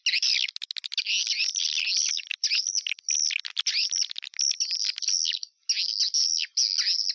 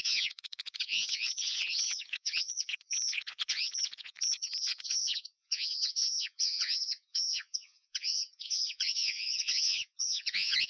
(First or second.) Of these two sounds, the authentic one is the first